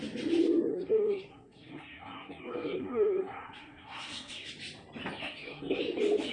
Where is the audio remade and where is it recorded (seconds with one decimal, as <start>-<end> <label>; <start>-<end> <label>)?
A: 0.0-0.7 recorded; 0.7-4.5 remade; 4.5-5.2 recorded; 5.2-5.8 remade; 5.8-6.3 recorded